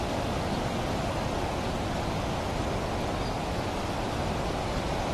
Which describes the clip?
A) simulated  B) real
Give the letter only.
B